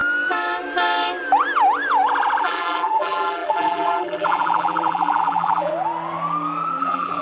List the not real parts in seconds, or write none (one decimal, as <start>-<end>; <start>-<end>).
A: 2.4-5.7; 6.8-7.2